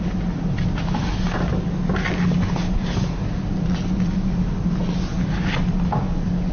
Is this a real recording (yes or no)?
yes